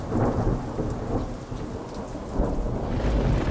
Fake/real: real